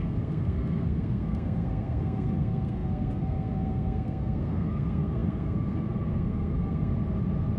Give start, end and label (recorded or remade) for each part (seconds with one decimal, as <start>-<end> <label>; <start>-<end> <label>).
0.0-6.9 remade; 6.9-7.6 recorded

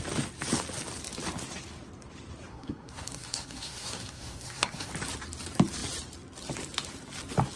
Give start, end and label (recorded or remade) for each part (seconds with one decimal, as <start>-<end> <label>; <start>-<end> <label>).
0.0-2.5 recorded; 2.5-4.9 remade; 4.9-7.6 recorded

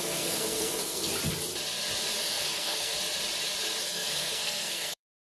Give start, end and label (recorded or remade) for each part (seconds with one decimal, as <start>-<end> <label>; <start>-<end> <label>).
0.0-1.1 remade; 1.1-2.2 recorded; 2.2-2.9 remade; 2.9-3.8 recorded; 3.8-5.3 remade